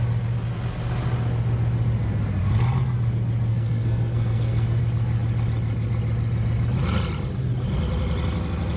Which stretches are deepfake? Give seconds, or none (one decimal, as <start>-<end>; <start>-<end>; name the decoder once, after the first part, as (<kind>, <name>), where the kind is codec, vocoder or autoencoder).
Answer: 3.5-4.8 (codec, SNAC)